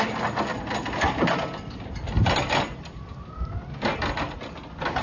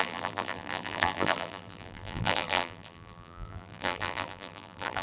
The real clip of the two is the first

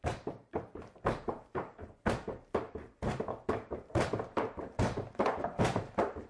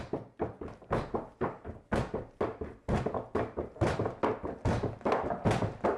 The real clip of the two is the second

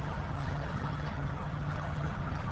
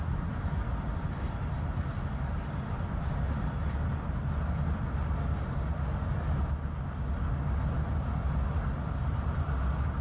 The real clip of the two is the second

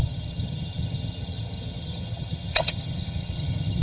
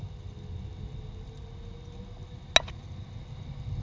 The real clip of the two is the second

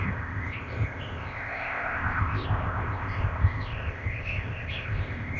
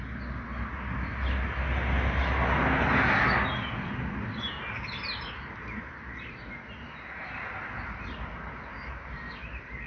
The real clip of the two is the second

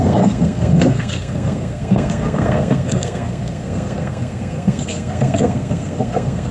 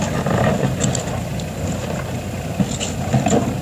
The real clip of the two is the second